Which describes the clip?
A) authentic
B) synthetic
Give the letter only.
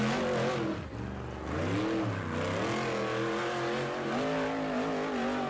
A